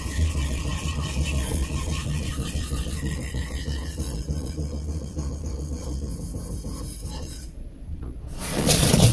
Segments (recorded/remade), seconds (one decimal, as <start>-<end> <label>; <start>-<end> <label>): 0.0-6.1 remade; 6.1-7.1 recorded; 7.1-9.1 remade